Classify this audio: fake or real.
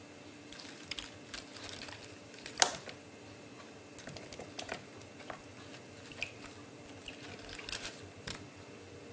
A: real